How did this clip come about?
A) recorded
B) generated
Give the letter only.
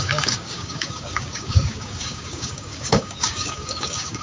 B